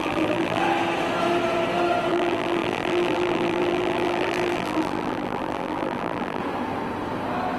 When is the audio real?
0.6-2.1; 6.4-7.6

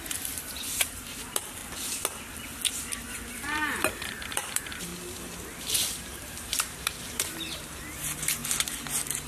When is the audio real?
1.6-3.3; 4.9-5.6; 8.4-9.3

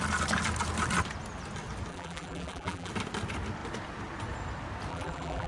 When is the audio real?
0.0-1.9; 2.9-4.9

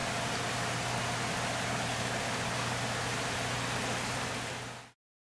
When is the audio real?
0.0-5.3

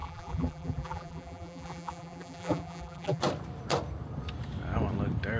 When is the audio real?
3.2-5.4

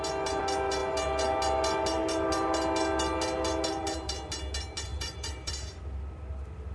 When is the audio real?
0.0-4.9; 5.5-6.7